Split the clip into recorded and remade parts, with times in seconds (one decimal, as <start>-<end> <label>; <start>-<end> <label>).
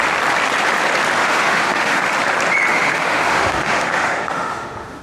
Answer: 0.0-1.2 recorded; 1.2-2.0 remade; 2.0-2.7 recorded; 2.7-5.0 remade